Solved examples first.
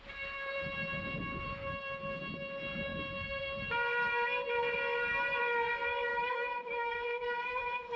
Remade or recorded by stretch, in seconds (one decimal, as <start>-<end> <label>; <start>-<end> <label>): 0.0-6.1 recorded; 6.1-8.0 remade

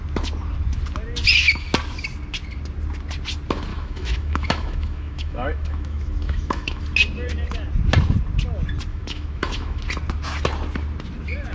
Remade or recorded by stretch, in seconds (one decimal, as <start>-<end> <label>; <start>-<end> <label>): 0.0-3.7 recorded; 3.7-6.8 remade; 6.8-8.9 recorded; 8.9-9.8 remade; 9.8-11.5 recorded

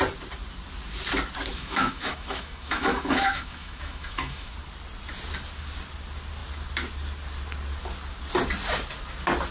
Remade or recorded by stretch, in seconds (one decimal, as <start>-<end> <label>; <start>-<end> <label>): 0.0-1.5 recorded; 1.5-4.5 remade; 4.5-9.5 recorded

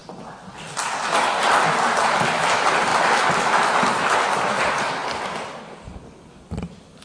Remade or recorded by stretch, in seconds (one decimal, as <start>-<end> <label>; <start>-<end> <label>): 0.0-7.0 recorded